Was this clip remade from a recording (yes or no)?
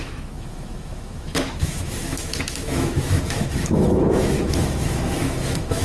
yes